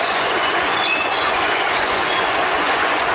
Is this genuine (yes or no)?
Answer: no